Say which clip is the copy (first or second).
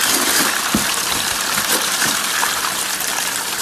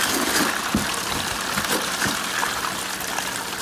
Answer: first